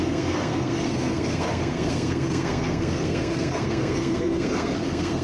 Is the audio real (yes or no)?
no